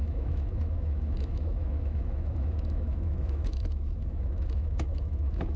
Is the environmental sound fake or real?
fake